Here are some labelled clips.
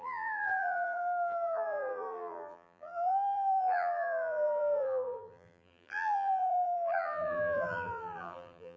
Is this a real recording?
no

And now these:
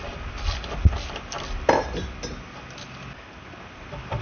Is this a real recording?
yes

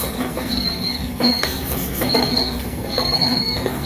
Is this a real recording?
no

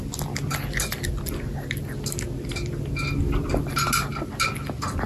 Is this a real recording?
yes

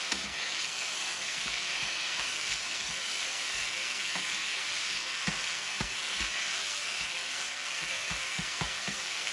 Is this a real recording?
no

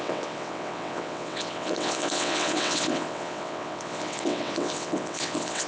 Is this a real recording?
no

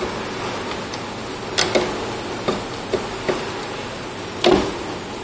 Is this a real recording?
yes